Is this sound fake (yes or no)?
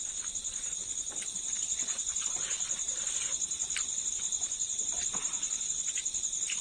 no